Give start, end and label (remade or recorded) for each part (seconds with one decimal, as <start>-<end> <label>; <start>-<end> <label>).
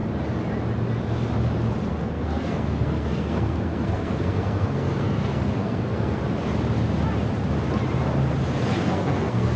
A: 0.0-1.9 recorded; 1.9-6.2 remade; 6.2-8.6 recorded; 8.6-9.6 remade